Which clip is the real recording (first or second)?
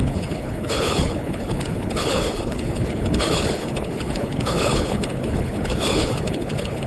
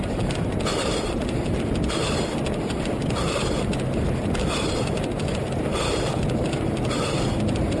second